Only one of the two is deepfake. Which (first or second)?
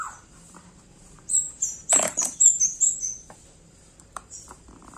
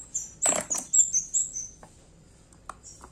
first